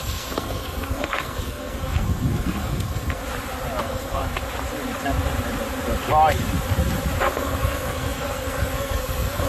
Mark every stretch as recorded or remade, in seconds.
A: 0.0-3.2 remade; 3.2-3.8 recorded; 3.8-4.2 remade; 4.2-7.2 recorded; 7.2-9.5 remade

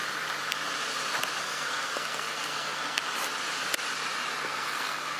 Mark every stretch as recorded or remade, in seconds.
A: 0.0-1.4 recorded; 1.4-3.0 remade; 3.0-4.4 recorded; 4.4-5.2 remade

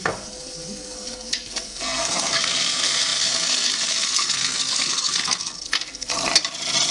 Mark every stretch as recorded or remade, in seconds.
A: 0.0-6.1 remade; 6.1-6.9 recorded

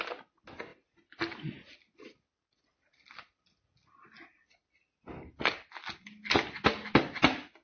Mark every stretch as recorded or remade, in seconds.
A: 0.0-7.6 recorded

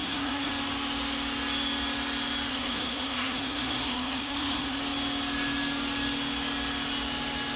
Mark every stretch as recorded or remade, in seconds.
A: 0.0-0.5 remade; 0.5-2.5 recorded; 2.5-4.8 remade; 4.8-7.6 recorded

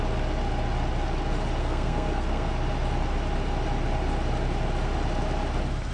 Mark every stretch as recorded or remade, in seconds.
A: 0.0-1.6 recorded; 1.6-2.5 remade; 2.5-5.9 recorded

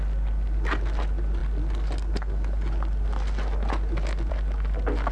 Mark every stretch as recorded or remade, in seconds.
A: 0.0-5.1 recorded

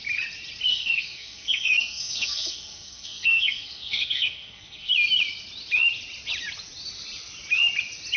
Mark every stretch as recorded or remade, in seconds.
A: 0.0-0.7 recorded; 0.7-4.9 remade; 4.9-8.2 recorded